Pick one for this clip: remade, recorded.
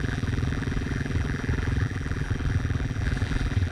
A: remade